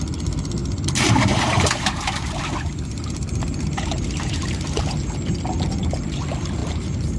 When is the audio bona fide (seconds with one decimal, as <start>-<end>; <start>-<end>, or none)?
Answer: 0.0-0.6; 4.9-6.6